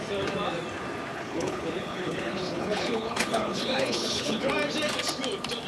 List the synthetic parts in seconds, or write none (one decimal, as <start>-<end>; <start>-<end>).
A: 1.1-4.5